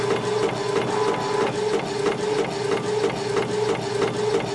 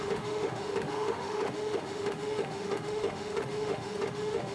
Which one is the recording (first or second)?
first